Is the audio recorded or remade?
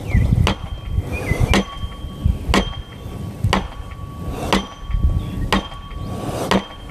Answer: recorded